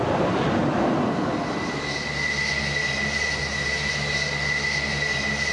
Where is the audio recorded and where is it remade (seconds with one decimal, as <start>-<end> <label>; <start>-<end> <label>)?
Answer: 0.0-5.5 recorded